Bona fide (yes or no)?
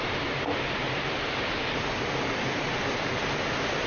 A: no